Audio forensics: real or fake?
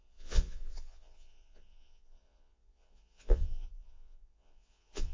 fake